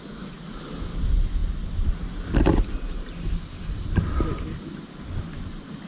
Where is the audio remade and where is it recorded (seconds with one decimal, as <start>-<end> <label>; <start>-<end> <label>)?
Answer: 0.0-5.9 recorded